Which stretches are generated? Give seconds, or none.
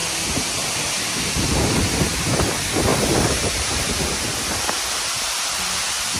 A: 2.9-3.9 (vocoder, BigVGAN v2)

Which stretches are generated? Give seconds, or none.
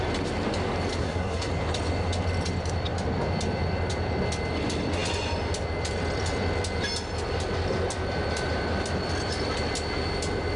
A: 1.0-1.5 (codec, SNAC)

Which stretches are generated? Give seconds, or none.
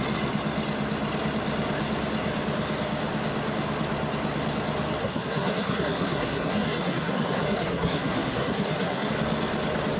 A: 5.0-9.1 (codec, SNAC)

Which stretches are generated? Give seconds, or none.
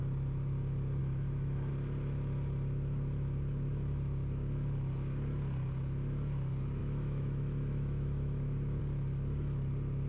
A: 1.0-1.7 (autoencoder, DAC-VAE); 6.8-8.8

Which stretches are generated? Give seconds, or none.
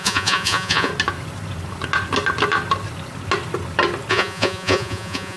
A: 0.0-0.9 (vocoder, Vocos); 4.1-5.4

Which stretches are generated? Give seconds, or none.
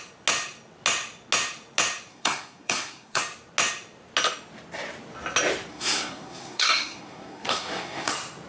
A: 2.1-3.2 (codec, SNAC); 5.7-8.1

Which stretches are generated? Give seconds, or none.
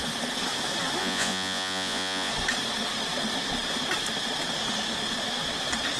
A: 1.0-2.3 (vocoder, Vocos)